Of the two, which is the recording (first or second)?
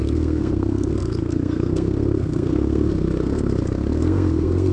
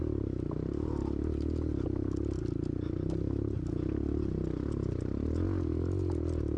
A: second